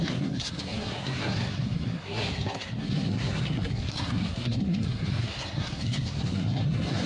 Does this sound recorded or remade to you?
remade